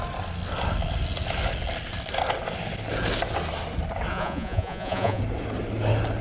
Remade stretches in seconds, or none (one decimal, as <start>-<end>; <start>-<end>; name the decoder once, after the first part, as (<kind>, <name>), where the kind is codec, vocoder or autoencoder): 4.1-5.2 (vocoder, Vocos)